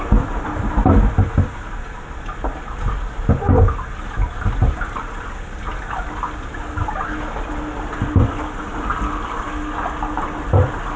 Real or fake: real